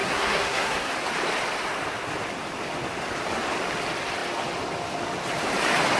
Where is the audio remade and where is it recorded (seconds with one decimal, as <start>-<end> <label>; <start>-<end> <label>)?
0.0-0.9 remade; 0.9-6.0 recorded